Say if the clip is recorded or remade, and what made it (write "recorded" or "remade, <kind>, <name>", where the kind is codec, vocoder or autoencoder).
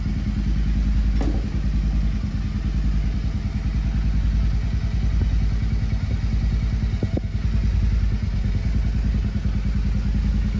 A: recorded